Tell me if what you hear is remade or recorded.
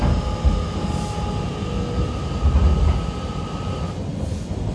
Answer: recorded